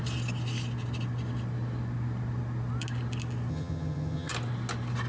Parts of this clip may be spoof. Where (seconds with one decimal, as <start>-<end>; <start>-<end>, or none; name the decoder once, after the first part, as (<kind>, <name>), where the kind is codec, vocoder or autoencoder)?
3.5-4.3 (vocoder, HiFi-GAN)